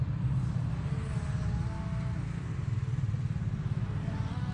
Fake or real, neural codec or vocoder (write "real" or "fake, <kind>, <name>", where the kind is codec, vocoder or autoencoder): real